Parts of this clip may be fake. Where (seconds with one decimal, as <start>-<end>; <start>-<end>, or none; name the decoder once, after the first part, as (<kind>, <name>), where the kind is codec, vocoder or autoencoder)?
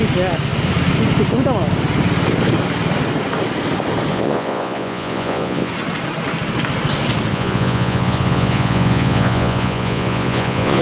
4.1-5.7 (vocoder, Vocos); 7.3-10.8